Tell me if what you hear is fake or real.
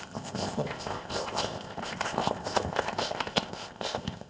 fake